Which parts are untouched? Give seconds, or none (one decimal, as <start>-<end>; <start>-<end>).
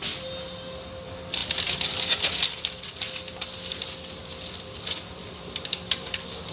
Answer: 0.0-6.5